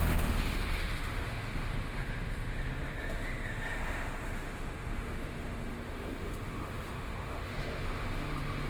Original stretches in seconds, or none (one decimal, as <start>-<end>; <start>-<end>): none

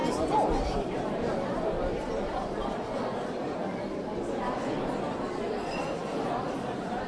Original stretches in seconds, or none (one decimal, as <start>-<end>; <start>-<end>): 0.0-0.9; 3.6-4.9

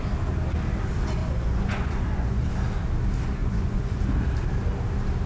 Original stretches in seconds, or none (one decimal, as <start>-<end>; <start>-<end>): 0.0-1.2; 2.4-3.4; 4.0-5.3

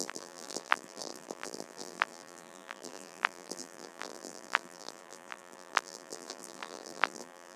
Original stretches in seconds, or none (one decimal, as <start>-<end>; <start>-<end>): none

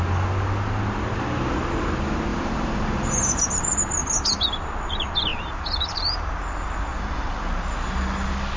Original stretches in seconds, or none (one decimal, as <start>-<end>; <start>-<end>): 0.0-2.3; 3.5-5.3; 6.0-6.9; 7.5-8.6

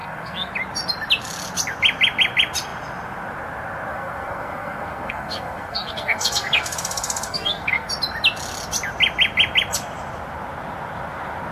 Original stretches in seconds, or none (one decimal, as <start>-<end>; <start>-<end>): 0.5-3.9; 7.9-11.5

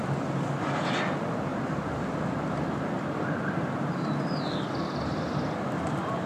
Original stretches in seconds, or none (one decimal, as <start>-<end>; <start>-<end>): 0.0-6.3

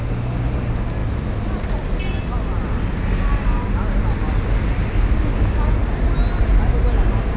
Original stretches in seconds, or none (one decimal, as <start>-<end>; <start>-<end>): 0.0-7.4